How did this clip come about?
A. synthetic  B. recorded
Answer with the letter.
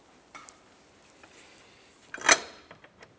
A